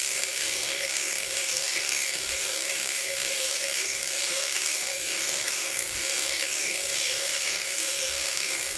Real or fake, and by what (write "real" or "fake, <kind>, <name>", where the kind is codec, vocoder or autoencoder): fake, codec, DAC